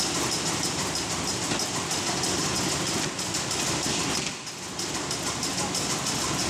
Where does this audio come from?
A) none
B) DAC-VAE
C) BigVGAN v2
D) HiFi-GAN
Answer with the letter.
A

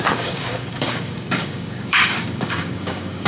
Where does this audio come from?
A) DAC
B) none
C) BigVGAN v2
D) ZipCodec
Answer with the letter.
A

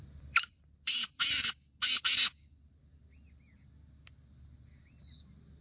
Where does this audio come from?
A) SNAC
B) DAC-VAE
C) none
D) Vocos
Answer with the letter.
C